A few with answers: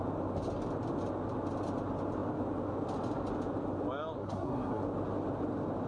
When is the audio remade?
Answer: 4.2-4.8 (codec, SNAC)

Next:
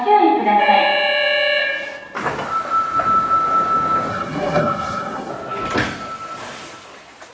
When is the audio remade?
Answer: 4.1-5.3 (codec, SNAC)